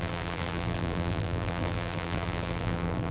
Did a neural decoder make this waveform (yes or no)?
yes